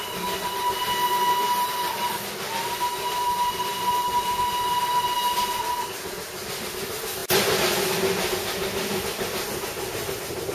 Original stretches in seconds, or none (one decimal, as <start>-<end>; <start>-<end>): 0.0-10.5